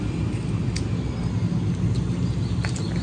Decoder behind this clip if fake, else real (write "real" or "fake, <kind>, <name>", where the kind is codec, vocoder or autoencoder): real